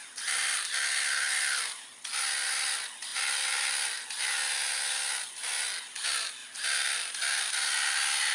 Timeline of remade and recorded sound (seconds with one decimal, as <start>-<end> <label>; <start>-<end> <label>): 0.0-2.2 remade; 2.2-3.1 recorded; 3.1-4.4 remade; 4.4-6.4 recorded; 6.4-7.5 remade; 7.5-8.3 recorded